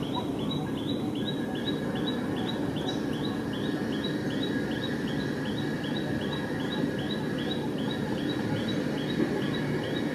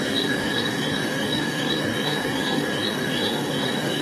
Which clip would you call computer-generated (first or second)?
second